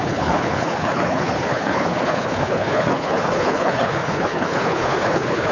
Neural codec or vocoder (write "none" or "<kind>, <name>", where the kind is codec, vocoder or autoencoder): codec, HILCodec